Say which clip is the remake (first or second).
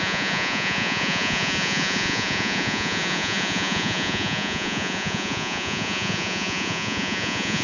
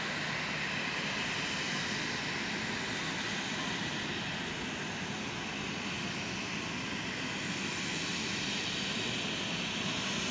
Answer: first